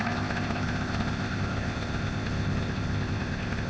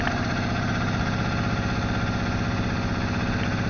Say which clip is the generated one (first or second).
first